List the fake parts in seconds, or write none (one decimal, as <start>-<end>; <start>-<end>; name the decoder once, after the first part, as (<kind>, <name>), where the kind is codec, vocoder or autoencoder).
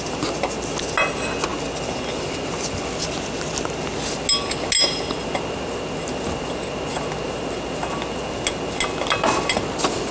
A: none